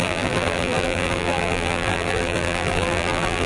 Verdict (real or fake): fake